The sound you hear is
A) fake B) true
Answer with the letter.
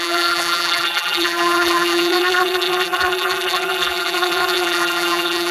A